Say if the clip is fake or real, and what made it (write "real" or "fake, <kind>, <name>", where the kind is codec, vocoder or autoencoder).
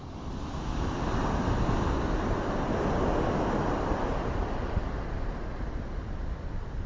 real